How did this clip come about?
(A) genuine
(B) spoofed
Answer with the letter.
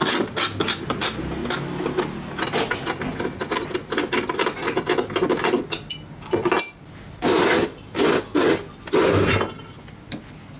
A